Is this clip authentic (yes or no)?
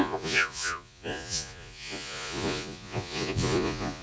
no